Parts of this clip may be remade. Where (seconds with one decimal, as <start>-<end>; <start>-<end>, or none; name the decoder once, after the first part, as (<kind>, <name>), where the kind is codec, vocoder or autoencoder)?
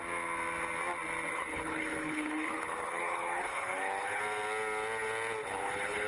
1.3-4.2 (codec, HILCodec); 5.4-6.1